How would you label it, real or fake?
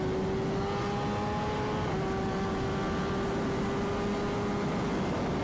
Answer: real